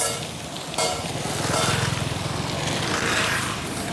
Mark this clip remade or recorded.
recorded